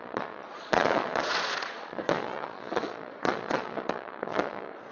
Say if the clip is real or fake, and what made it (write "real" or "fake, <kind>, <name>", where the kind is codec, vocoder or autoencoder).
fake, vocoder, Vocos